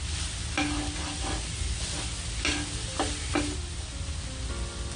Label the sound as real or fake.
real